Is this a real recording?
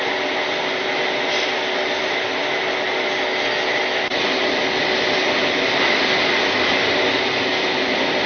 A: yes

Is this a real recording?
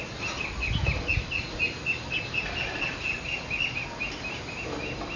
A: yes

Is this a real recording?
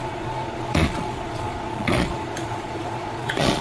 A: no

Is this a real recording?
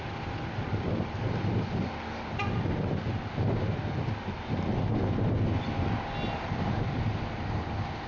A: yes